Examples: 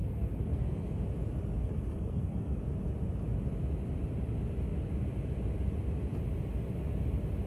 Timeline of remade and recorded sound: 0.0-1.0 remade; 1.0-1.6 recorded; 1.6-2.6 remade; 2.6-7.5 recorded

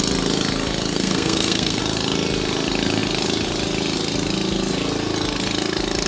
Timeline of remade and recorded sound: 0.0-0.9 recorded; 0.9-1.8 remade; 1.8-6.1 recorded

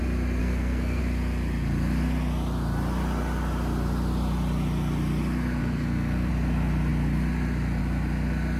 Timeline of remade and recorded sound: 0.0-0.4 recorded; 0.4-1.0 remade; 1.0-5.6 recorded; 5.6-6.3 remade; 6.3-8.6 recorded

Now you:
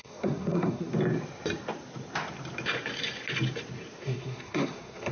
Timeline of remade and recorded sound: 0.0-0.9 remade; 0.9-4.0 recorded; 4.0-5.1 remade

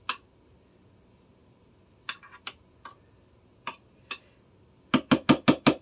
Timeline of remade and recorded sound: 0.0-5.8 recorded

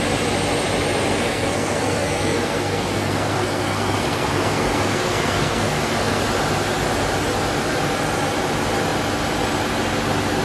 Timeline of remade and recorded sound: 0.0-1.0 recorded; 1.0-6.2 remade; 6.2-10.4 recorded

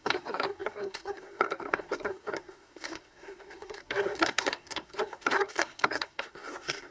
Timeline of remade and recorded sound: 0.0-6.9 remade

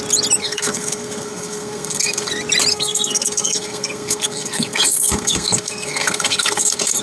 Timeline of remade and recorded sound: 0.0-0.4 recorded; 0.4-2.3 remade; 2.3-2.7 recorded; 2.7-7.0 remade